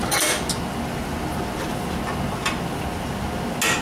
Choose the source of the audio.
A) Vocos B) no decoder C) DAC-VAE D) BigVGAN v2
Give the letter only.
B